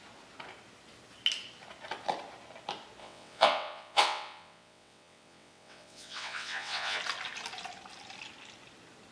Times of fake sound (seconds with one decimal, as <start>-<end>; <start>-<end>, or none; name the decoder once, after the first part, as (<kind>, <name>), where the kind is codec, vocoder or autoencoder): 3.0-7.0 (vocoder, WaveNeXt)